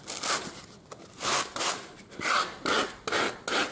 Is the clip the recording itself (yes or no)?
yes